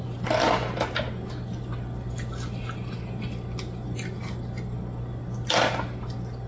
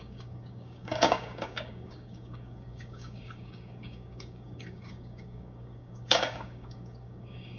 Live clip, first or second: first